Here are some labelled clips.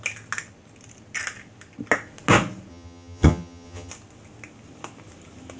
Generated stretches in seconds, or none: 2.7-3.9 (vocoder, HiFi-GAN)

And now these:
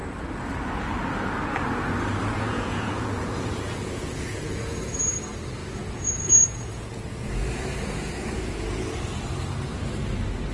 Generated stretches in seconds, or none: 2.5-5.0 (vocoder, Vocos); 5.6-8.4

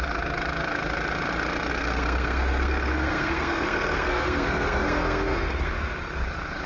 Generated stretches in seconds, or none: 1.7-5.7 (codec, SNAC)

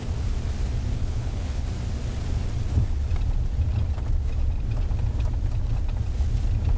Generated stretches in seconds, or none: 1.0-1.7 (codec, HILCodec)

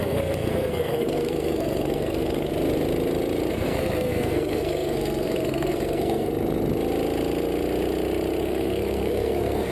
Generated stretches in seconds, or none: 0.0-2.5 (codec, SNAC); 3.5-6.3; 8.4-9.7

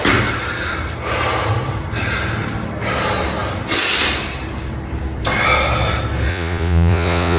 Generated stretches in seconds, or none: 6.3-7.4 (vocoder, Vocos)

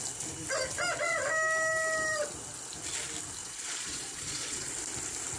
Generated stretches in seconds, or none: 3.4-4.7 (vocoder, Vocos)